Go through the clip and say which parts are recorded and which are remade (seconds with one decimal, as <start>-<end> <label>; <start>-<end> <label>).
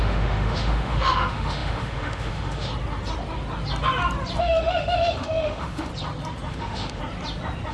0.0-2.7 remade; 2.7-4.4 recorded; 4.4-5.9 remade; 5.9-6.5 recorded; 6.5-7.0 remade; 7.0-7.7 recorded